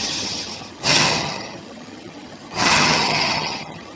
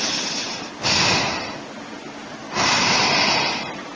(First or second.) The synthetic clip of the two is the first